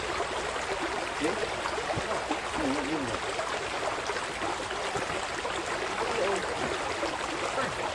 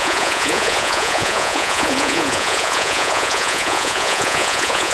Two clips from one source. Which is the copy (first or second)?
second